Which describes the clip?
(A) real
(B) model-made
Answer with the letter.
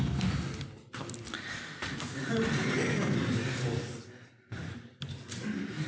A